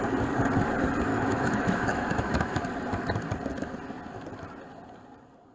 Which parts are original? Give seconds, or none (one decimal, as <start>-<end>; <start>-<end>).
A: 0.0-1.1; 2.6-5.5

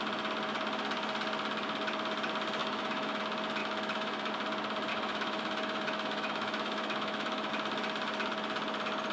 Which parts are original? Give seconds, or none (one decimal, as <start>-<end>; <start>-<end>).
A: 0.0-2.6; 3.2-3.6; 4.3-4.9; 7.5-9.1

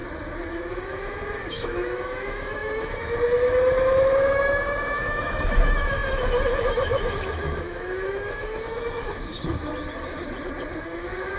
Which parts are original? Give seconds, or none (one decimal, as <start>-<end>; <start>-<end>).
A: 0.0-0.5; 9.7-10.8

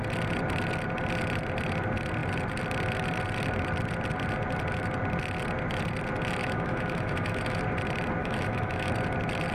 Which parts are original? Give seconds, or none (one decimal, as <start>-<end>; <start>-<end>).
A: 0.0-6.4; 7.6-8.2; 8.9-9.5